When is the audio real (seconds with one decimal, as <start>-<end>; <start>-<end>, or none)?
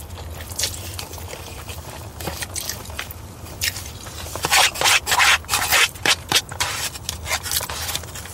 0.0-5.7; 6.4-8.3